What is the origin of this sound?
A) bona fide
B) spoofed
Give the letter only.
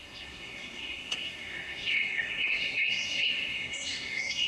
B